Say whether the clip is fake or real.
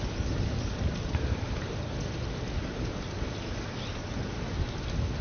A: real